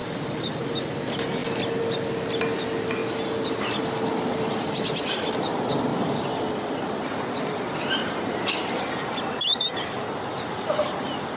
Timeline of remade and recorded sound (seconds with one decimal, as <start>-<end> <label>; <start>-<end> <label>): 0.0-0.9 remade; 0.9-5.9 recorded; 5.9-11.4 remade